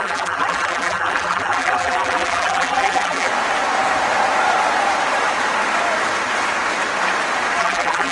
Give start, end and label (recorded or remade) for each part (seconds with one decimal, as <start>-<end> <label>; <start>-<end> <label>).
0.0-3.3 remade; 3.3-7.6 recorded; 7.6-8.1 remade